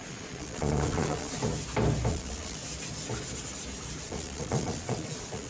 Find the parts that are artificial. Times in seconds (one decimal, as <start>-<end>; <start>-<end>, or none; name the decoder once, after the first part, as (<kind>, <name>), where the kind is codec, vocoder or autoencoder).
0.0-1.4 (vocoder, Vocos); 2.1-2.6; 4.0-5.5